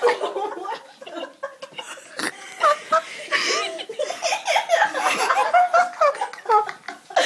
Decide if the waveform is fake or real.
real